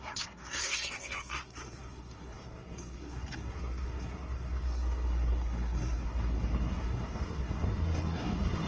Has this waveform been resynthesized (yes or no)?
yes